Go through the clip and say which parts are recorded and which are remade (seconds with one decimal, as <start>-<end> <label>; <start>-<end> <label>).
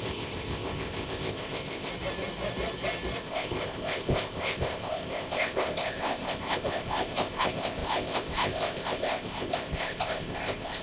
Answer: 0.0-1.9 remade; 1.9-3.2 recorded; 3.2-10.8 remade